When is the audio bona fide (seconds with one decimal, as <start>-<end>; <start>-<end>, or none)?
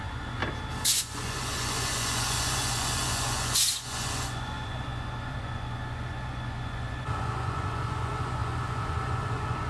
0.4-0.9